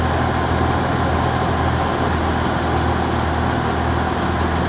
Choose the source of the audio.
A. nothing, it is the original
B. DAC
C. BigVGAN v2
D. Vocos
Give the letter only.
A